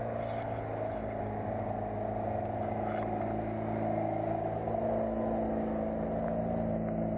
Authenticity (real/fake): real